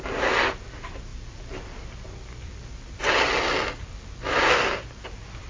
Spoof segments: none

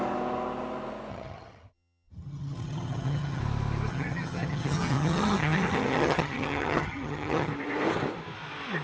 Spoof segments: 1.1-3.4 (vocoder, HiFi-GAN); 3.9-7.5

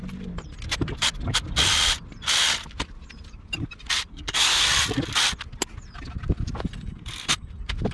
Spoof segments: 4.1-4.6 (codec, SNAC)

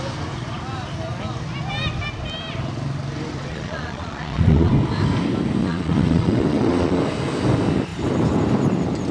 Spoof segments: 3.5-4.7 (vocoder, Vocos); 5.6-7.0

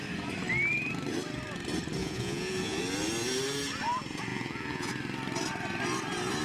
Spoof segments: 2.0-2.8 (vocoder, Vocos); 4.3-4.9